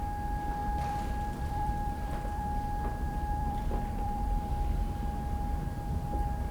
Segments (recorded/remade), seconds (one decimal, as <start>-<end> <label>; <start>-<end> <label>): 0.0-0.6 recorded; 0.6-4.5 remade; 4.5-6.5 recorded